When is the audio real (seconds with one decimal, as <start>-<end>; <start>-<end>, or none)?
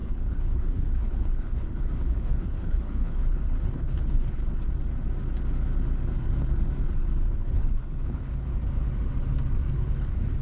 4.4-7.3; 8.5-9.7